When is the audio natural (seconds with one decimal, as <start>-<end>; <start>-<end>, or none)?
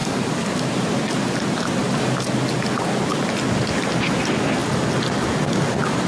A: 0.7-6.1